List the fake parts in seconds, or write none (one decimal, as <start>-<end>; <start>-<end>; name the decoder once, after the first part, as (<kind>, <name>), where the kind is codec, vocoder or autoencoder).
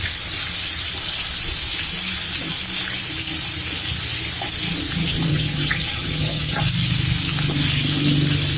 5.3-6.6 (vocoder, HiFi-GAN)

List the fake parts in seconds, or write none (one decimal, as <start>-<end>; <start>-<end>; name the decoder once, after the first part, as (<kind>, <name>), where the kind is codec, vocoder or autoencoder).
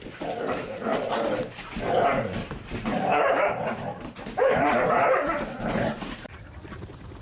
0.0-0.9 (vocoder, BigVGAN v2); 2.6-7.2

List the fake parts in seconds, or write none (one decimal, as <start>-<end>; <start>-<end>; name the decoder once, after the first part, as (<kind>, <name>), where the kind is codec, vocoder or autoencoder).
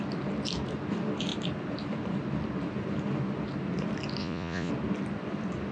4.2-4.7 (vocoder, Vocos)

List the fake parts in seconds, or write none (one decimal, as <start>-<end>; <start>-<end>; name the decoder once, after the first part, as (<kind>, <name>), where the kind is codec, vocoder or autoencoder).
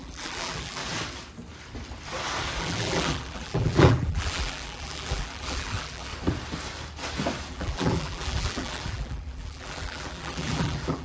0.0-0.8 (vocoder, BigVGAN v2); 2.6-6.1; 7.5-11.0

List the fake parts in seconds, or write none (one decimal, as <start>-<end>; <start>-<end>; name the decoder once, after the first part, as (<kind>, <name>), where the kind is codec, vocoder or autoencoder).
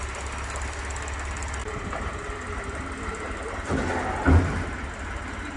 none